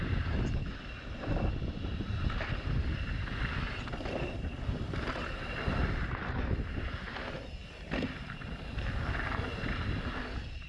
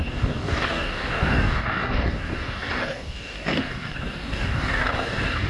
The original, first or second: first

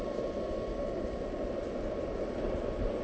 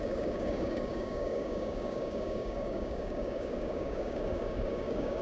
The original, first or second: first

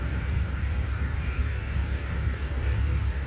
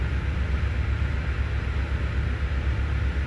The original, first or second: second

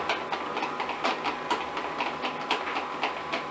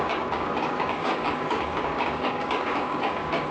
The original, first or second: first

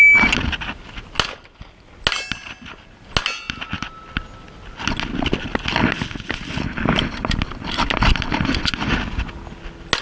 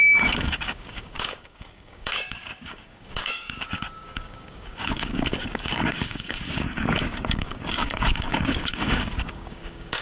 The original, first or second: first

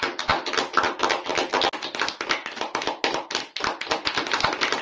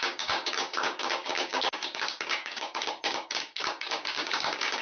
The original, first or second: first